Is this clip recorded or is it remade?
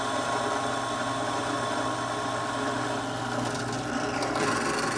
recorded